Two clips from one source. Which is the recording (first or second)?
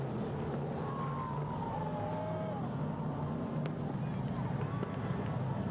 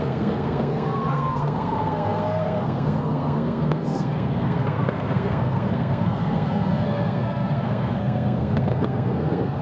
first